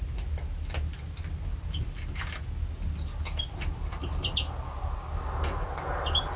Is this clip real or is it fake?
real